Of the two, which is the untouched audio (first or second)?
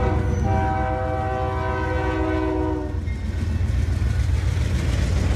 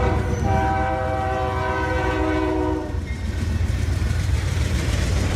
first